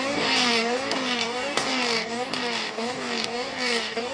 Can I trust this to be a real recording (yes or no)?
no